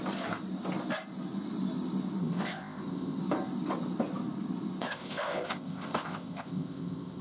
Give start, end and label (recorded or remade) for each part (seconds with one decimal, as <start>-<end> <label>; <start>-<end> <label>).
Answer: 0.0-2.2 recorded; 2.2-3.2 remade; 3.2-4.8 recorded; 4.8-7.2 remade